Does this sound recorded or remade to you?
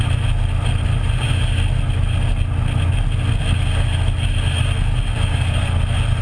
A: recorded